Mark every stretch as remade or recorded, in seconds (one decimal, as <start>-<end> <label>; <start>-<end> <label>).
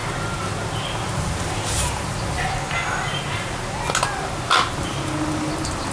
0.0-5.9 recorded